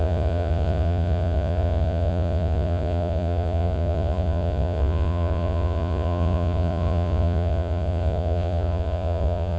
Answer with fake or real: fake